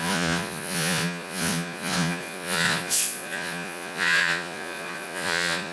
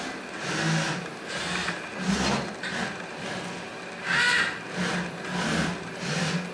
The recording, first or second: second